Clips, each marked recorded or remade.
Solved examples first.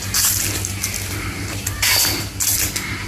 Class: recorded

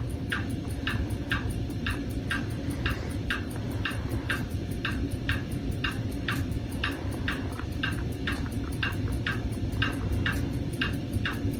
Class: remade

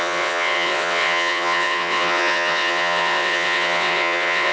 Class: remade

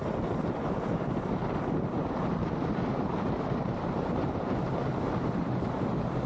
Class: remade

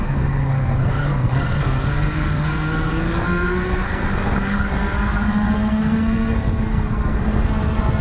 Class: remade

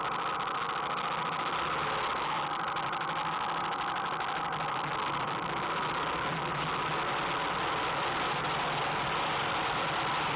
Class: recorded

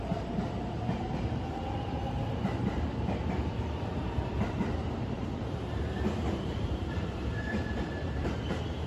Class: remade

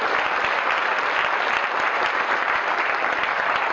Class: recorded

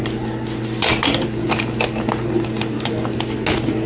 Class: recorded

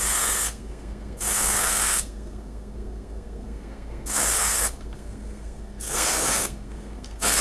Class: remade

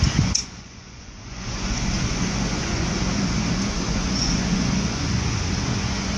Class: remade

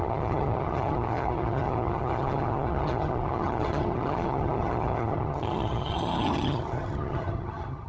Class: remade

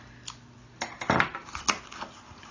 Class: recorded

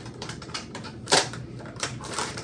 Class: remade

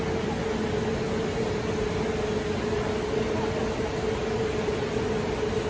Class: recorded